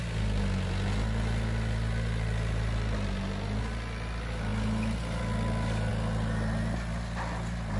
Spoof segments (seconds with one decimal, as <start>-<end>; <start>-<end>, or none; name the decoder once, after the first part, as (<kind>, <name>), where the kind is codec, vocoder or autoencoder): none